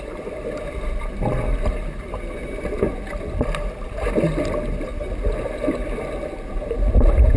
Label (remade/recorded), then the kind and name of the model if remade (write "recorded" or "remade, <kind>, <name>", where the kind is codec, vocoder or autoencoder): recorded